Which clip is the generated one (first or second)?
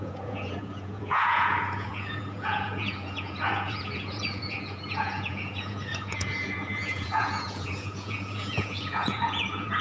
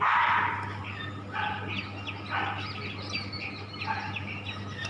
first